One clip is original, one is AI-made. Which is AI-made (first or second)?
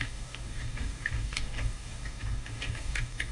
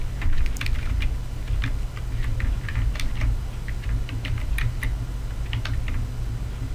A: first